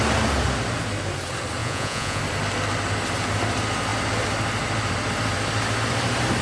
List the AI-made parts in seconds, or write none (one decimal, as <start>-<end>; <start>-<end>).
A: 1.6-2.2